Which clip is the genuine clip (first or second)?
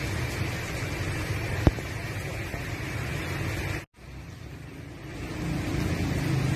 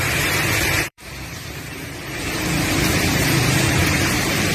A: first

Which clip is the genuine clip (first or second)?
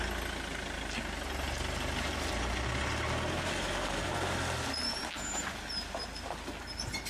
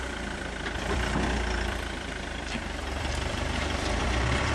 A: first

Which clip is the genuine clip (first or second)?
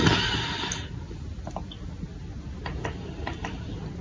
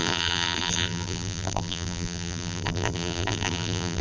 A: first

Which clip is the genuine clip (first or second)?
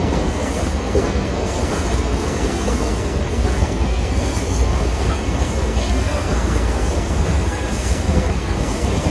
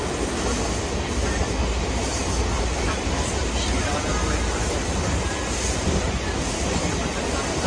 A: second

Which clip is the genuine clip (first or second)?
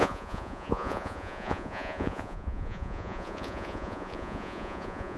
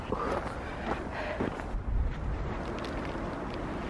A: second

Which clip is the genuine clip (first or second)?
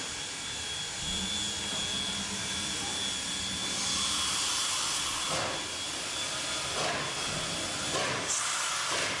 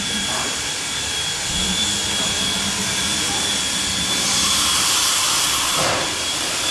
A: first